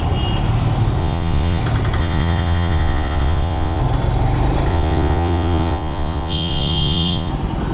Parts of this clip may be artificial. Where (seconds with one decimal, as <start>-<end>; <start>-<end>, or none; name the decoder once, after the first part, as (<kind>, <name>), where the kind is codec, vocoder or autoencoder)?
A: 1.0-1.6 (vocoder, Vocos); 2.0-3.8; 4.7-7.3